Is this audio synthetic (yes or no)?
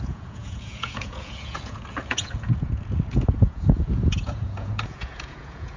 yes